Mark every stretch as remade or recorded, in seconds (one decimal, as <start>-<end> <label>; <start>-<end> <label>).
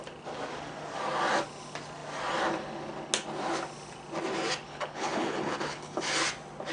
0.0-4.7 recorded; 4.7-6.0 remade; 6.0-6.7 recorded